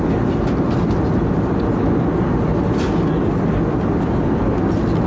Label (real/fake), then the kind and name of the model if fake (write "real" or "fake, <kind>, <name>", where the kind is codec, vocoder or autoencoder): real